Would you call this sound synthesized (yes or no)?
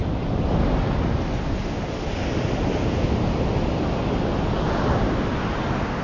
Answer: no